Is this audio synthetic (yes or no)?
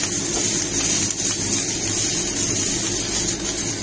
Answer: no